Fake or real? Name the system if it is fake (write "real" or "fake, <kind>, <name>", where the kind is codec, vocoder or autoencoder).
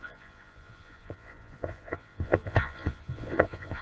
fake, vocoder, Vocos